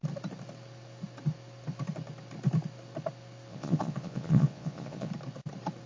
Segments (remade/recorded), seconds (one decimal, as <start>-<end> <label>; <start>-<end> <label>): 0.0-3.5 recorded; 3.5-5.1 remade; 5.1-5.9 recorded